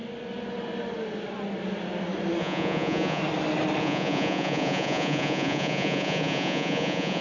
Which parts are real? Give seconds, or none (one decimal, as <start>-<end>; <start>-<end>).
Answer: 0.0-2.4; 3.2-3.8